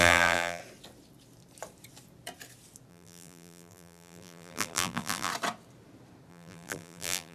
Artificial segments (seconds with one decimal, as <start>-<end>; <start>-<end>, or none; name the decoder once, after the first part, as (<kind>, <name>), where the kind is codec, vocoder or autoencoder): 0.0-0.6 (vocoder, BigVGAN v2); 2.9-5.3; 6.3-7.3